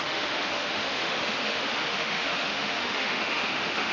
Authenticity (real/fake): fake